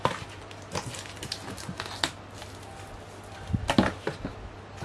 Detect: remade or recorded recorded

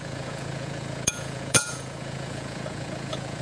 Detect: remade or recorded remade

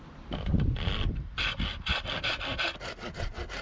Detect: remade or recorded recorded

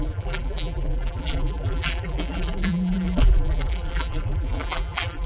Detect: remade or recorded remade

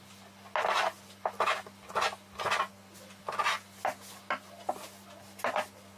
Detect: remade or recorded recorded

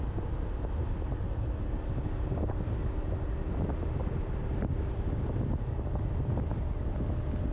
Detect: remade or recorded recorded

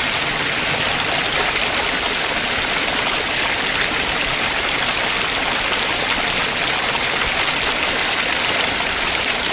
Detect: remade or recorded recorded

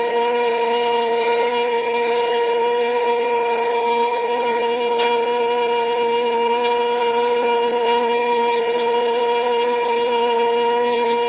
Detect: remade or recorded remade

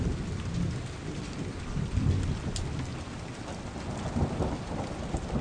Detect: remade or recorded recorded